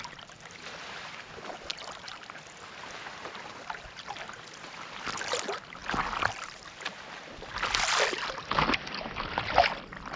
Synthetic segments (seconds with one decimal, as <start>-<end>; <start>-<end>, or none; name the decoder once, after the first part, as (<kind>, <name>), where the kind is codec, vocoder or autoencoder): none